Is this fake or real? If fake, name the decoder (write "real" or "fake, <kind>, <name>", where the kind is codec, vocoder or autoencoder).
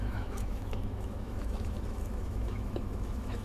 fake, autoencoder, DAC-VAE